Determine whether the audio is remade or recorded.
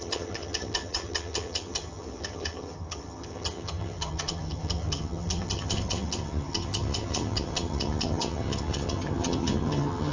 remade